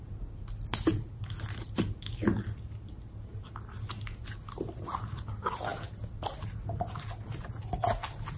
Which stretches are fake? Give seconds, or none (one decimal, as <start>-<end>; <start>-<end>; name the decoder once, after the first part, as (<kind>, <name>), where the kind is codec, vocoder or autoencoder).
none